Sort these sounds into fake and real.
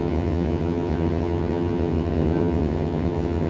fake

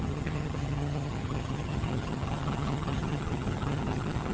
fake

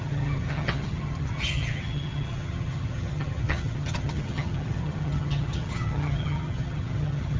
fake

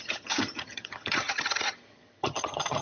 fake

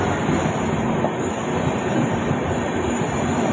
real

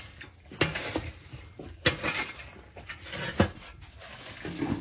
real